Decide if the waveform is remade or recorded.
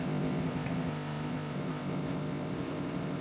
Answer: remade